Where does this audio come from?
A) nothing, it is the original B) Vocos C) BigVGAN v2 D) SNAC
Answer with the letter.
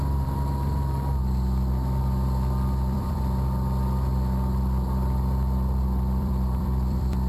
C